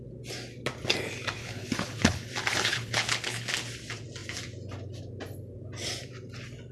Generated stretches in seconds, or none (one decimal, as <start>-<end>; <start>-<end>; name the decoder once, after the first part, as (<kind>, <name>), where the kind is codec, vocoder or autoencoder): 1.4-2.3 (codec, HILCodec); 2.7-3.5